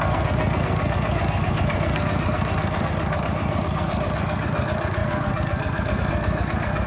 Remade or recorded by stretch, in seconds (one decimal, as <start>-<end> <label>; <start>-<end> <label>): 0.0-6.9 remade